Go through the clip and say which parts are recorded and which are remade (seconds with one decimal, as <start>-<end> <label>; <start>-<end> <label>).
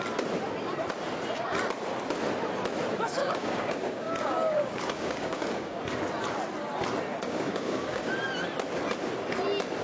0.0-3.2 recorded; 3.2-5.8 remade; 5.8-7.1 recorded; 7.1-8.1 remade; 8.1-9.8 recorded